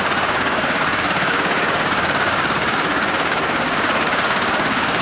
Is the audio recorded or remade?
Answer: remade